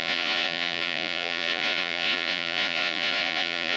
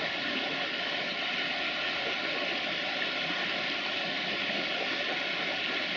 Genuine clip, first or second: second